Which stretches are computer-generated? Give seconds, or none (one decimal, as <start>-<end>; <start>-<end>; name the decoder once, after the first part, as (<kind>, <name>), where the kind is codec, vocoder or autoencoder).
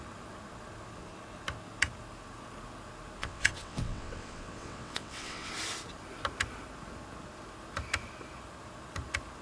3.2-5.5 (vocoder, WaveNeXt)